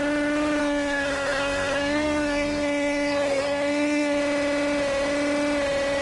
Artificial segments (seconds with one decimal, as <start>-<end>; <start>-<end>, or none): 0.6-4.2